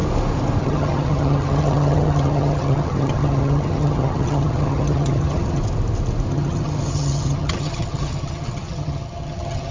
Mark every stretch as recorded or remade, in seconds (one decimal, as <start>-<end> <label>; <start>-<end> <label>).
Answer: 0.0-0.6 recorded; 0.6-5.6 remade; 5.6-6.3 recorded; 6.3-9.7 remade